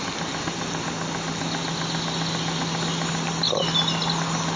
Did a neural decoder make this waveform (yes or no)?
no